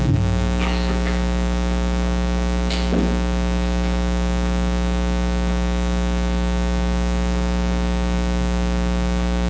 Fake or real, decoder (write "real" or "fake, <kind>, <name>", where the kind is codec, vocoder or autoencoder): fake, autoencoder, DAC-VAE